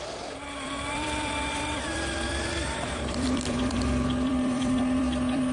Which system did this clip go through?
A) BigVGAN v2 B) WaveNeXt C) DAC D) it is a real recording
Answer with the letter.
A